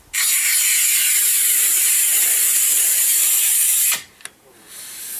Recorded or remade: recorded